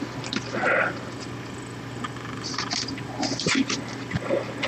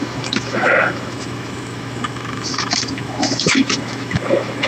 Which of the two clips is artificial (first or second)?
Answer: second